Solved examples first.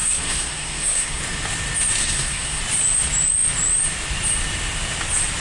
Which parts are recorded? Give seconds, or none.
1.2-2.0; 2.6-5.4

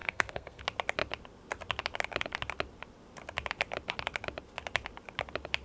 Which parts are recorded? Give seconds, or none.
0.6-5.6